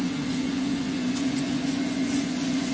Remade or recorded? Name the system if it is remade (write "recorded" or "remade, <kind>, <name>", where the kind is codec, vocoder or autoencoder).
remade, vocoder, Vocos